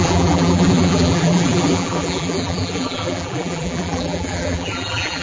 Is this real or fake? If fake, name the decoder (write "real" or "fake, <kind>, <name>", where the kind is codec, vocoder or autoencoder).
fake, vocoder, BigVGAN v2